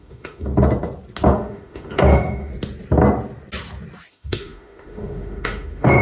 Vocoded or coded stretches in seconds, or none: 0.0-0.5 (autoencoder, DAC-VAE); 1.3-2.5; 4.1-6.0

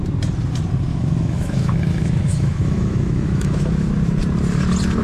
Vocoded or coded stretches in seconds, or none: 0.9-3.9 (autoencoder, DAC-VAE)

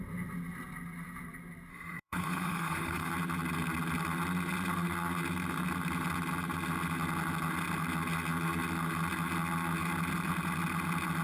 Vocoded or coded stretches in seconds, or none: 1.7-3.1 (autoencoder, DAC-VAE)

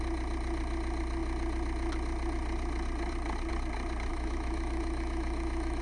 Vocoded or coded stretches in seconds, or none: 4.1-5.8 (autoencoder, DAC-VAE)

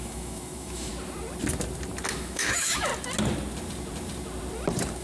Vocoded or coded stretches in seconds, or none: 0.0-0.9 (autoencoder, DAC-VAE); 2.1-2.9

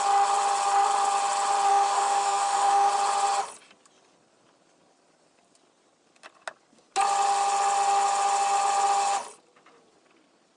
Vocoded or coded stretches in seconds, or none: 1.7-2.9 (autoencoder, DAC-VAE)

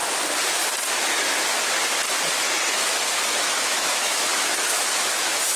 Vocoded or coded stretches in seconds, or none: 2.8-5.6 (autoencoder, DAC-VAE)